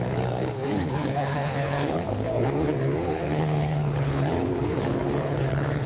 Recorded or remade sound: remade